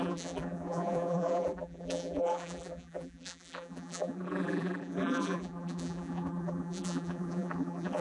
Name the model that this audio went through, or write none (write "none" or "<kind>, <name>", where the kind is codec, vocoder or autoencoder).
vocoder, BigVGAN v2